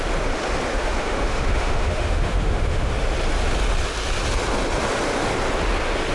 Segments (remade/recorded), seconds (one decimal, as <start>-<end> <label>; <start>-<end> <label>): 0.0-0.7 recorded; 0.7-2.9 remade; 2.9-6.1 recorded